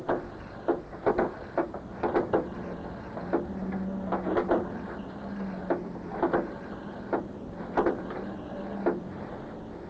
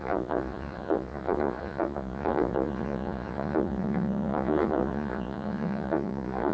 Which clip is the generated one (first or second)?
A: second